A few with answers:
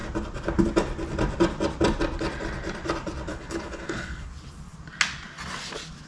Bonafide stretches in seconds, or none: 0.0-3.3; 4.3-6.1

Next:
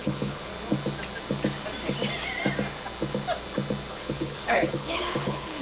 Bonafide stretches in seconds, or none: 0.5-3.9

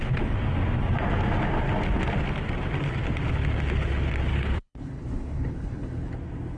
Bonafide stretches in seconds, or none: 0.0-4.3; 6.1-6.6

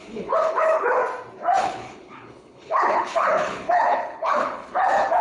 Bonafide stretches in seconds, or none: 1.0-1.6

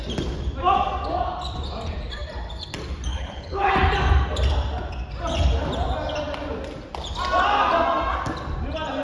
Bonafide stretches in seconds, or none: 0.0-3.1; 3.7-9.0